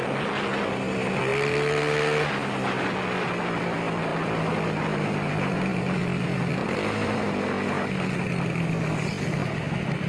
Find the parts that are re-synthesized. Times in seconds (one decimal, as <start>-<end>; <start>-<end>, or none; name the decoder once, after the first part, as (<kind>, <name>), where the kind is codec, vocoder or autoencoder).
none